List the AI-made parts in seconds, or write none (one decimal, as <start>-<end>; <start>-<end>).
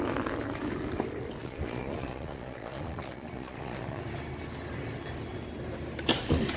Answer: 1.4-4.0